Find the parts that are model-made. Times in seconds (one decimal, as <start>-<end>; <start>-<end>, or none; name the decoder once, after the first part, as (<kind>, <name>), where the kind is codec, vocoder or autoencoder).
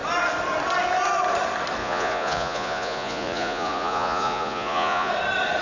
1.8-5.1 (vocoder, Vocos)